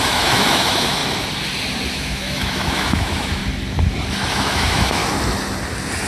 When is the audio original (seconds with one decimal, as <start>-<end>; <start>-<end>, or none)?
1.0-1.9; 3.4-4.3; 5.0-6.1